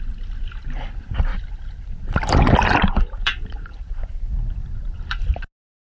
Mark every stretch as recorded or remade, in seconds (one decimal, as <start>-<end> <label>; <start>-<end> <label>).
0.0-1.3 recorded; 1.3-3.9 remade; 3.9-4.4 recorded; 4.4-5.2 remade; 5.2-5.8 recorded